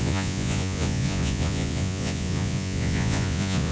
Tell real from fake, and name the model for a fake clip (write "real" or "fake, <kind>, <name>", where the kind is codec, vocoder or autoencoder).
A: fake, vocoder, Vocos